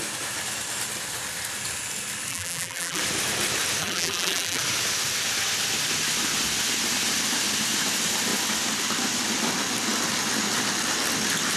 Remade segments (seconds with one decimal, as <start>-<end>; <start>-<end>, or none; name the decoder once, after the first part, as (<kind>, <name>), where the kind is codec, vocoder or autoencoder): 2.3-3.0 (vocoder, BigVGAN v2); 3.8-4.6